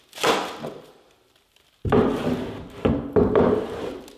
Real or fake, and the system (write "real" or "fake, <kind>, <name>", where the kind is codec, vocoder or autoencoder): real